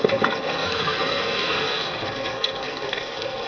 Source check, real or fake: fake